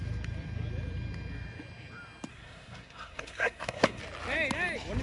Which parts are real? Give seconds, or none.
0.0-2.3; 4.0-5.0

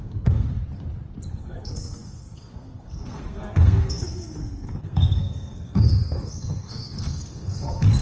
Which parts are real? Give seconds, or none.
0.6-1.3

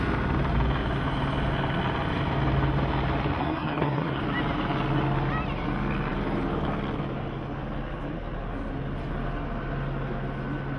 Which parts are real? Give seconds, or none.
0.0-3.4; 4.2-10.8

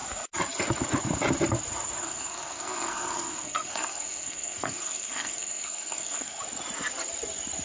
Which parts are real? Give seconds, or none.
0.0-2.0; 6.4-7.6

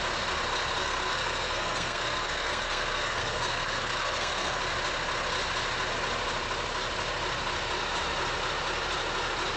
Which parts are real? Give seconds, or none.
0.0-0.8; 4.6-9.6

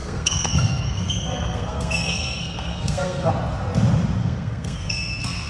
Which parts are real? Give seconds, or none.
3.3-4.2

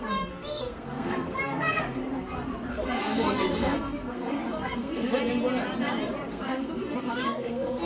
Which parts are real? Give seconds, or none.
2.0-2.7; 5.2-6.3

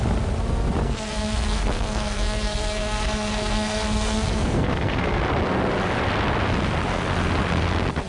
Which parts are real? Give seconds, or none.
0.0-0.8; 5.2-8.1